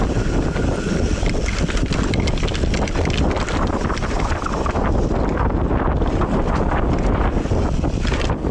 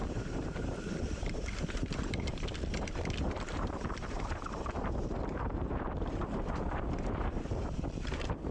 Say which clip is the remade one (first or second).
second